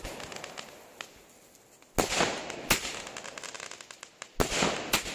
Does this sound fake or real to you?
real